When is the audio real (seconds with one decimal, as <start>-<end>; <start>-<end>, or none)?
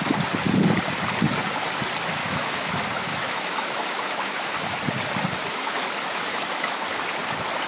0.0-2.2; 2.7-3.1; 4.8-5.4; 6.8-7.7